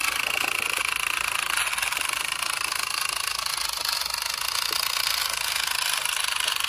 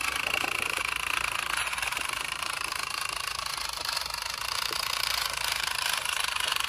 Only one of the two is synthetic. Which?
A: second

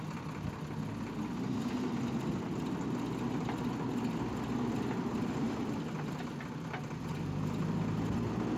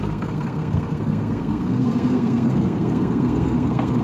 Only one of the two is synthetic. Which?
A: second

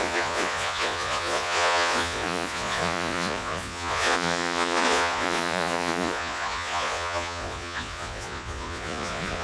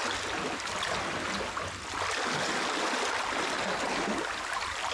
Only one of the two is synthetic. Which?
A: first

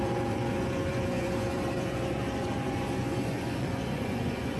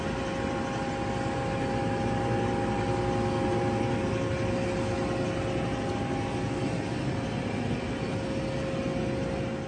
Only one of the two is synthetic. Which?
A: first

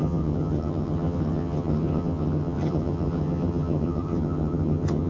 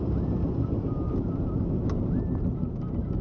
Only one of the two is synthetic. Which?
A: first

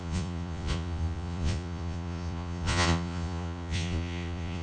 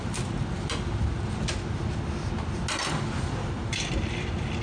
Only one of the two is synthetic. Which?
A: first